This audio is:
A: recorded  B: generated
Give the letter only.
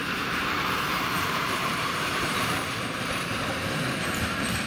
B